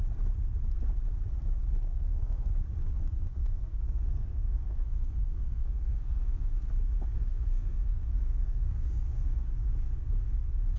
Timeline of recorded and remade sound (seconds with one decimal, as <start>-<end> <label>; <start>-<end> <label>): 0.0-1.9 recorded; 1.9-2.5 remade; 2.5-3.0 recorded; 3.0-6.5 remade; 6.5-7.1 recorded; 7.1-9.5 remade; 9.5-10.8 recorded